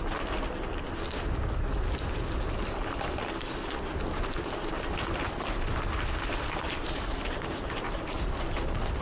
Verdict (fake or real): fake